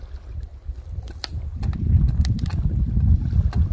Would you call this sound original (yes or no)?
yes